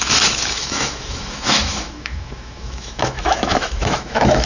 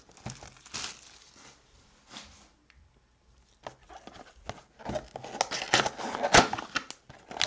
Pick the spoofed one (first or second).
first